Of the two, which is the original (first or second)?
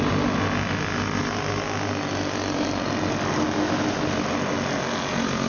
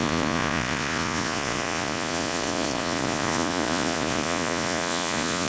first